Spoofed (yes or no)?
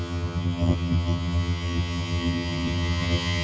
yes